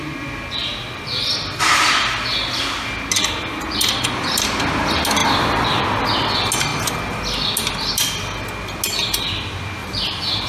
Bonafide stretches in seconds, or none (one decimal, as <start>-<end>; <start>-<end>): 0.0-0.6; 1.3-5.2; 5.8-9.8